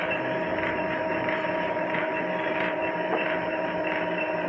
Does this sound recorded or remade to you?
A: remade